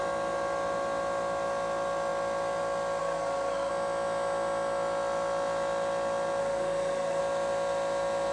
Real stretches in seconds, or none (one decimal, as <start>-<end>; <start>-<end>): 0.0-3.0; 3.7-6.4; 7.2-8.3